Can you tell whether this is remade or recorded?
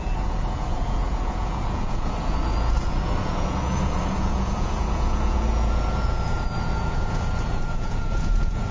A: remade